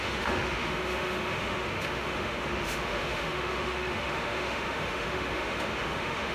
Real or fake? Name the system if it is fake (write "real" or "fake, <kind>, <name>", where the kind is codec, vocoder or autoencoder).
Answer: fake, autoencoder, DAC-VAE